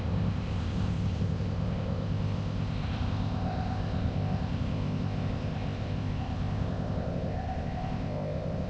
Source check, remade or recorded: remade